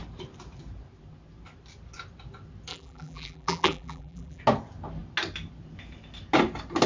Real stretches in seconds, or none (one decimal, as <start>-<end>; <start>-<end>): 0.0-2.7; 4.4-6.9